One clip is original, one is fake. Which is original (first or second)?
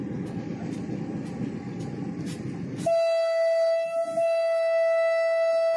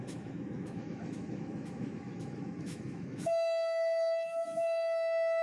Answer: first